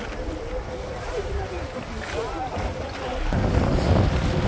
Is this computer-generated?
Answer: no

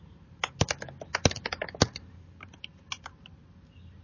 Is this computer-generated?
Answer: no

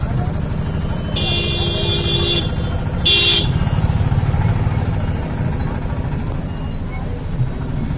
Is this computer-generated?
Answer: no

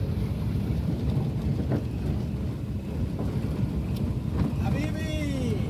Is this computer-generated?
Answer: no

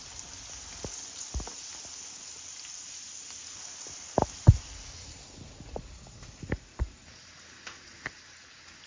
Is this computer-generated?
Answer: no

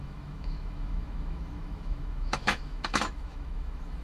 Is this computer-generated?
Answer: yes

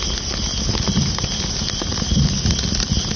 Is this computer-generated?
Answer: no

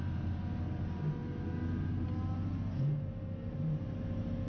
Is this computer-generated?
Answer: no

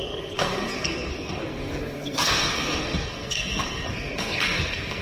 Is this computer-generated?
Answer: yes